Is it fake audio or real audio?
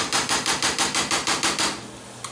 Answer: real